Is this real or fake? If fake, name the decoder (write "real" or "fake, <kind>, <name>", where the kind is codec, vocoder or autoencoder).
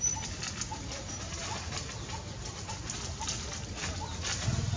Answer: real